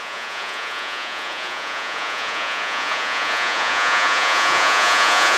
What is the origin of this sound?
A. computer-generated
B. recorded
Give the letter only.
A